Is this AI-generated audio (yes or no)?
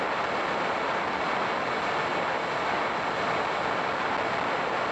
no